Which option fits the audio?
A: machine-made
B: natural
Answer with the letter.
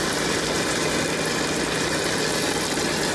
B